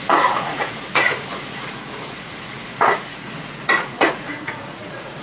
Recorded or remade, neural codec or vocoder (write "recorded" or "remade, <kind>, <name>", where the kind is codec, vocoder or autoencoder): remade, vocoder, Vocos